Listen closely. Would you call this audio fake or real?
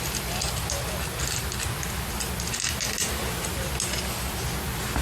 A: real